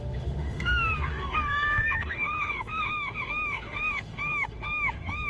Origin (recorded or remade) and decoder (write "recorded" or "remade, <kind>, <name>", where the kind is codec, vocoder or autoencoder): remade, autoencoder, DAC-VAE